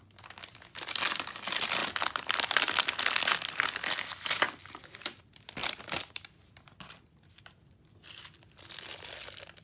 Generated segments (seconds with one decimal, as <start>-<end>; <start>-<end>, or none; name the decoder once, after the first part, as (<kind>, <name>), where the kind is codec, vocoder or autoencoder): 5.6-7.6 (vocoder, BigVGAN v2)